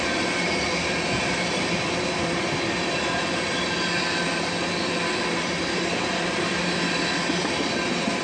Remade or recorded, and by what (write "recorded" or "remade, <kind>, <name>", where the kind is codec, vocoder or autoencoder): recorded